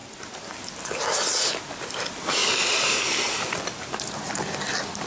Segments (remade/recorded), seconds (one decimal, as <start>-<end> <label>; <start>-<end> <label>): 0.0-5.1 recorded